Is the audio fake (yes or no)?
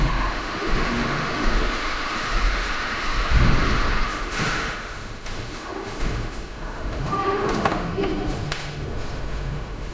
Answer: yes